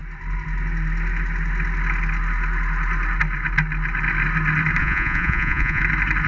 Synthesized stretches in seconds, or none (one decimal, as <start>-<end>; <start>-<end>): 4.8-5.8